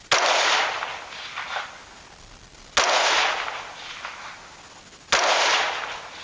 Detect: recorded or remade recorded